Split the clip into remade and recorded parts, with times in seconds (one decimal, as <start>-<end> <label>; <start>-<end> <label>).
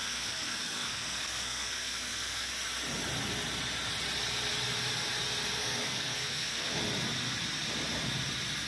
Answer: 0.0-2.5 remade; 2.5-5.6 recorded; 5.6-6.8 remade; 6.8-8.7 recorded